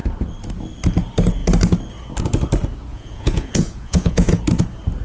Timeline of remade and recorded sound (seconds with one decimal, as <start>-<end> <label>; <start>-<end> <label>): 0.0-2.9 recorded; 2.9-4.4 remade; 4.4-5.0 recorded